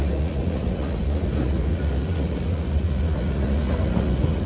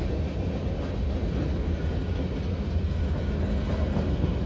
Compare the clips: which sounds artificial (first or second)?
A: first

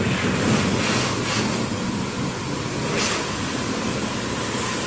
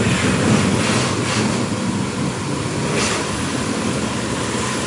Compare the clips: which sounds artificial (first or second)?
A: second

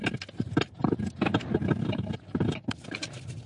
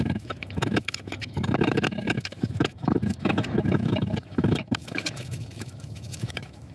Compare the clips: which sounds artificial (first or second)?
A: second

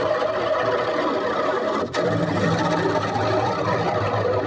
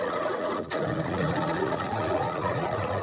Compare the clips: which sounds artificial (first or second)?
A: second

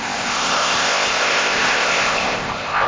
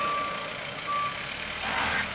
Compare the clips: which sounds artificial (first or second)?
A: first